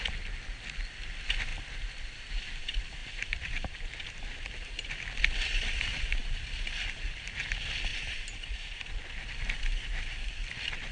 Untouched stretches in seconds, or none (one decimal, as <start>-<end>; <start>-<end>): 0.0-3.0; 4.0-7.9; 8.9-10.9